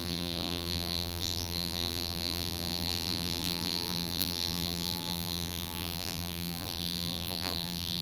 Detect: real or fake fake